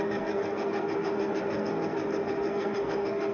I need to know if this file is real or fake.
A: fake